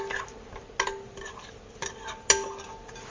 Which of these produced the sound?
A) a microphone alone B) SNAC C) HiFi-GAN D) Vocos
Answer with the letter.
A